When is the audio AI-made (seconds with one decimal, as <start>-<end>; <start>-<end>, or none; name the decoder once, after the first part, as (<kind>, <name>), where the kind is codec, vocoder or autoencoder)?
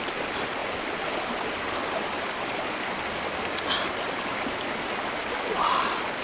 0.0-4.3 (vocoder, BigVGAN v2); 5.2-6.2